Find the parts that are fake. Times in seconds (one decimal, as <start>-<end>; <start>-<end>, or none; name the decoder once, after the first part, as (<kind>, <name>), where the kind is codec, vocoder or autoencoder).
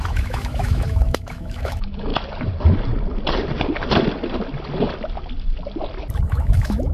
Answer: 0.0-2.1 (autoencoder, DAC-VAE); 6.2-6.9